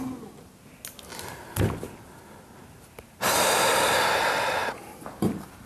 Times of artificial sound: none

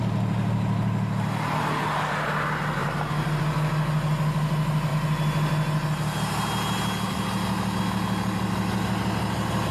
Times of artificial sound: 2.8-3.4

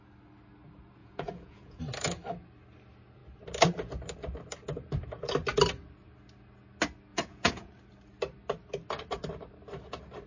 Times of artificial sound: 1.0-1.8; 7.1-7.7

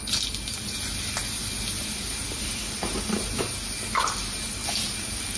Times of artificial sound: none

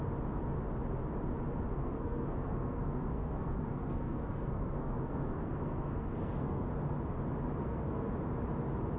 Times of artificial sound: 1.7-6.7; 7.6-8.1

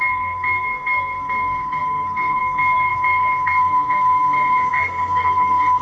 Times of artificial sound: 0.0-5.8

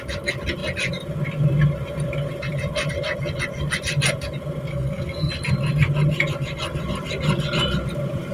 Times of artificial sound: 4.7-5.3